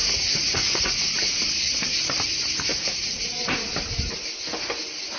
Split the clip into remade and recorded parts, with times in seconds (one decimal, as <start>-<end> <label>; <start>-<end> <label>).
0.0-1.4 remade; 1.4-2.7 recorded; 2.7-3.3 remade; 3.3-5.2 recorded